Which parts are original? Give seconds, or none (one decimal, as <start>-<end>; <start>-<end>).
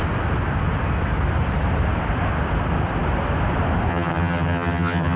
0.0-3.9